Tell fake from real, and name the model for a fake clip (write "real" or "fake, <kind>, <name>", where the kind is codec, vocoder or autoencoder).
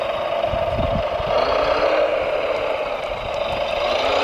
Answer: real